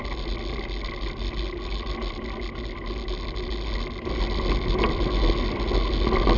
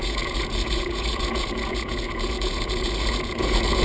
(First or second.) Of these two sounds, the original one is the first